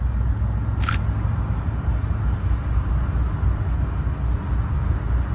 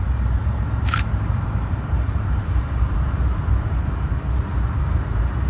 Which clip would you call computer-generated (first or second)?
second